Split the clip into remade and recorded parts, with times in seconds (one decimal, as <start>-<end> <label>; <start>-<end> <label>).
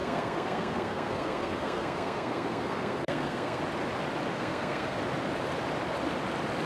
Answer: 0.0-3.6 remade; 3.6-4.3 recorded; 4.3-5.0 remade; 5.0-6.7 recorded